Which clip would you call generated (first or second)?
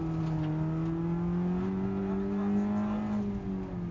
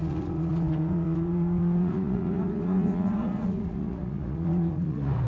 second